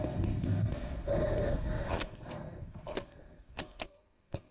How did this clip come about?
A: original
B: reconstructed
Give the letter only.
B